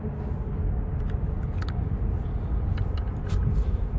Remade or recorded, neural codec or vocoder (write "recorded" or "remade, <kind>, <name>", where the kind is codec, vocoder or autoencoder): recorded